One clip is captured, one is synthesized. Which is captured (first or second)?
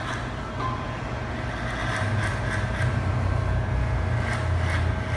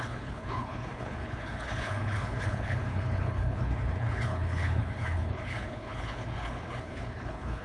first